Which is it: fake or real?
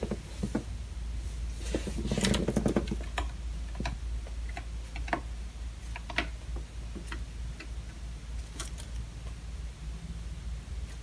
real